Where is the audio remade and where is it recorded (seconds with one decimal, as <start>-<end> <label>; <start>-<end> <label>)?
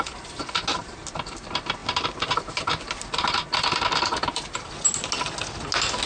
0.0-6.1 recorded